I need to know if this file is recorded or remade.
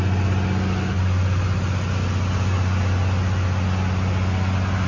recorded